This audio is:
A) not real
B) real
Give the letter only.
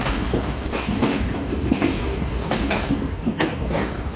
A